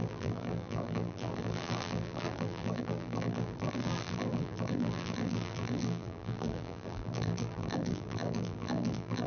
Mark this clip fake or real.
fake